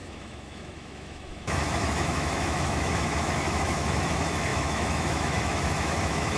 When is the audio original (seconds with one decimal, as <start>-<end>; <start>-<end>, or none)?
none